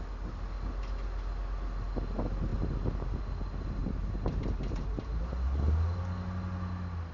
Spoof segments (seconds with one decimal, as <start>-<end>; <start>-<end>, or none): 3.8-5.2